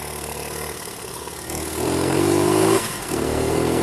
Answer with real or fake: fake